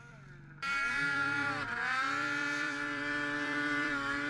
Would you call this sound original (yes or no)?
no